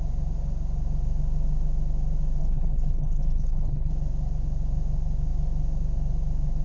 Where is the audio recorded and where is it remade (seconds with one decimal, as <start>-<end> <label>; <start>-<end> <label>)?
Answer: 0.0-2.4 recorded; 2.4-3.9 remade; 3.9-6.6 recorded